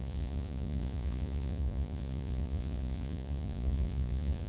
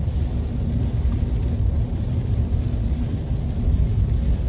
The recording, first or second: second